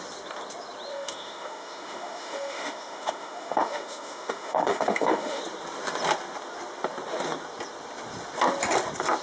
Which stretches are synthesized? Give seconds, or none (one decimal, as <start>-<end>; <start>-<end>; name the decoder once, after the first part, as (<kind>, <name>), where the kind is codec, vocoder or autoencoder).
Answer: 0.9-5.4 (autoencoder, DAC-VAE)